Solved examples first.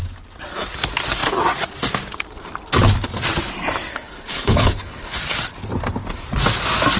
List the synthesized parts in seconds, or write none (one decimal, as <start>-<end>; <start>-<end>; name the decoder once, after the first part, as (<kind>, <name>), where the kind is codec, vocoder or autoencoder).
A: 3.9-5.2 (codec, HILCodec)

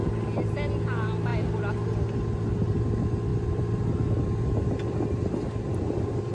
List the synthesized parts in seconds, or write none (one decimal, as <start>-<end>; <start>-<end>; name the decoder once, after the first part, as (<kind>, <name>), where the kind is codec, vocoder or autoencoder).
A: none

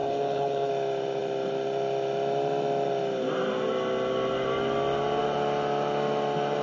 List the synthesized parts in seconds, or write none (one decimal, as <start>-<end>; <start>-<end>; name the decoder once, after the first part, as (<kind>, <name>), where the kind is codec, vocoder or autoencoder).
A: 0.0-0.7 (codec, HILCodec)

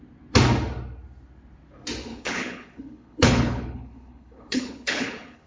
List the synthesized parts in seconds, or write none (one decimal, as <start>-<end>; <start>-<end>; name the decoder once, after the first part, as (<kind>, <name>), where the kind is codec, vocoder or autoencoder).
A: 2.1-5.5 (codec, HILCodec)